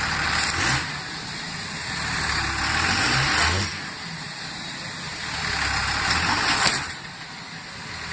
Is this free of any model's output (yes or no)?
yes